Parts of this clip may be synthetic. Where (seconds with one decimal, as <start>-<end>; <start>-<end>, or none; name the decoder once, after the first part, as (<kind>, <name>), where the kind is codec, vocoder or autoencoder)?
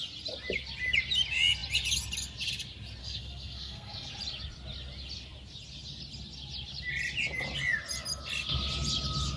3.0-4.1 (codec, SNAC)